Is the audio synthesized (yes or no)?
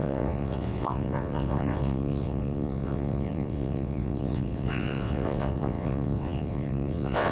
yes